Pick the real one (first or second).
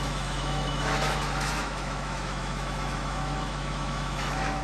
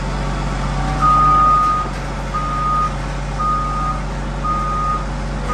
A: second